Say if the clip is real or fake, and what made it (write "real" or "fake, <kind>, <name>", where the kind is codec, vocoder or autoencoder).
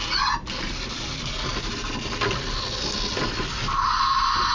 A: real